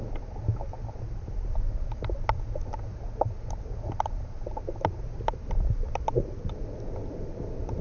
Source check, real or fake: real